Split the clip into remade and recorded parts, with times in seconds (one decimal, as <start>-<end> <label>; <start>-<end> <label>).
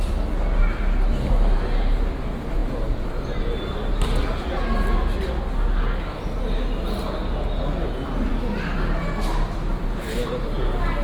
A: 0.0-11.0 recorded